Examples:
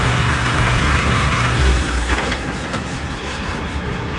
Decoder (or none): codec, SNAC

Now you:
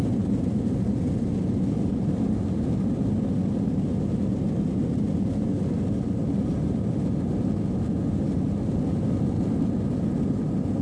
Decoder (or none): none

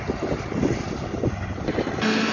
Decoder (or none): none